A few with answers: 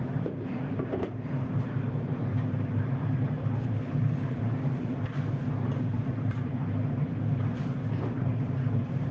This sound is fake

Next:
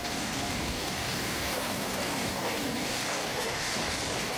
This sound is fake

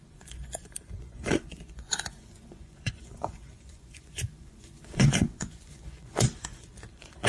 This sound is fake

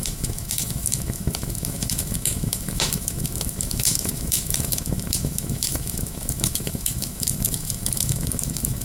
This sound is fake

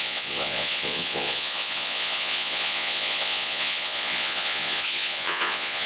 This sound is fake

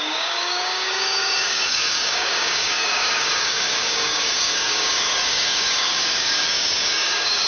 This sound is fake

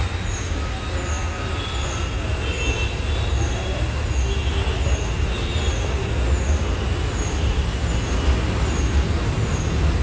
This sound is real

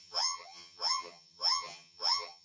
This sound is fake